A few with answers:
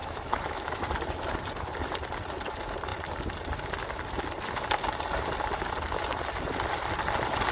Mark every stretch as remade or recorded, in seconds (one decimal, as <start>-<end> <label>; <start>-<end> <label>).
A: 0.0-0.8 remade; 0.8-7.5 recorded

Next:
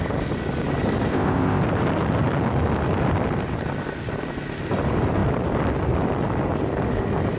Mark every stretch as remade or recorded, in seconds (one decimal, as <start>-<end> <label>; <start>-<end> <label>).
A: 0.0-1.1 recorded; 1.1-1.6 remade; 1.6-7.4 recorded

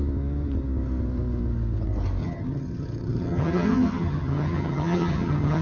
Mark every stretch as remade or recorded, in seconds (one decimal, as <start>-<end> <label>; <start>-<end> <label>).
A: 0.0-2.2 recorded; 2.2-5.6 remade